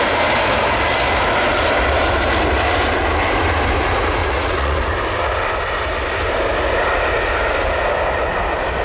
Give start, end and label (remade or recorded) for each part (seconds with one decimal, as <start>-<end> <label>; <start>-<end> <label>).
0.0-4.2 recorded; 4.2-4.9 remade; 4.9-8.8 recorded